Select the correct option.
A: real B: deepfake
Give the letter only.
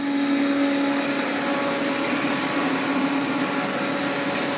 A